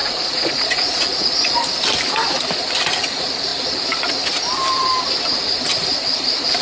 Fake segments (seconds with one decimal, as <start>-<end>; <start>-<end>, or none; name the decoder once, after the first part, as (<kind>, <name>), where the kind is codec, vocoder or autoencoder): 0.0-1.6 (vocoder, Vocos)